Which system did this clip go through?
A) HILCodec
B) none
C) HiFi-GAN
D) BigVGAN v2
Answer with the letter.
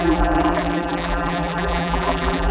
D